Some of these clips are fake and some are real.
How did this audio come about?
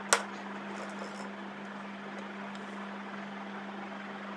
real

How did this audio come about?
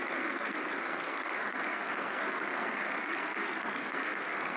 fake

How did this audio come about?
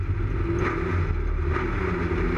real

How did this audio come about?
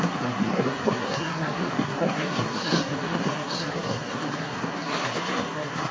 fake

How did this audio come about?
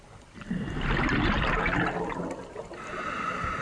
real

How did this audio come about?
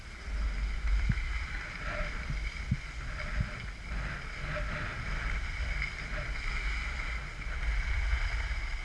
real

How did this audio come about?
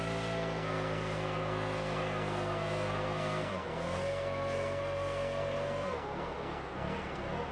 fake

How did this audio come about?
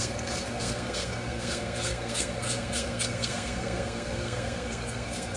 fake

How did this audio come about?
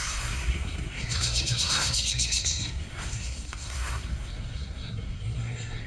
fake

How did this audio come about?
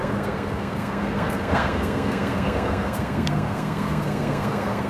fake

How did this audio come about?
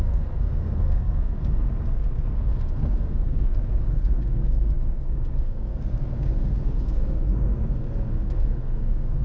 fake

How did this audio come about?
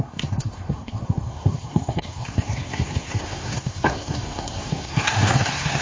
fake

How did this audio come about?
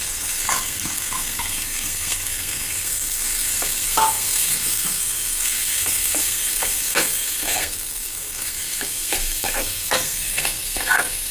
fake